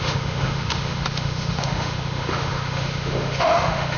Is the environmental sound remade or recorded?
remade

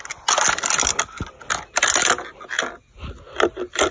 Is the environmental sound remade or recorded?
recorded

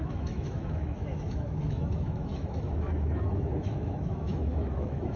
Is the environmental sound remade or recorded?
remade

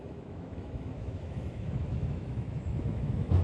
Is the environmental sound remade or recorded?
remade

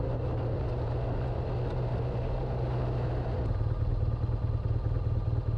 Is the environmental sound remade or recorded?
recorded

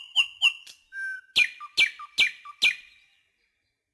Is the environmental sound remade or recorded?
recorded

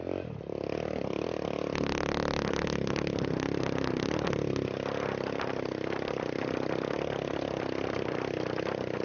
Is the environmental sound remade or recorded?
recorded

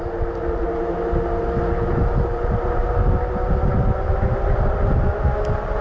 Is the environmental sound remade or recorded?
recorded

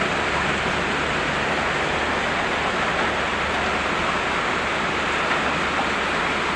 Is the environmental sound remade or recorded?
recorded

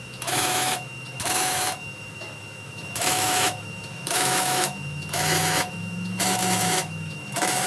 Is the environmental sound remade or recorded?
remade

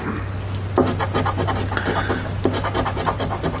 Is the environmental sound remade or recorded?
recorded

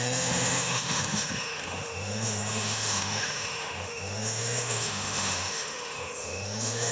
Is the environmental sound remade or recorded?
remade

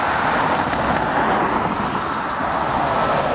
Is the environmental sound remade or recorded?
recorded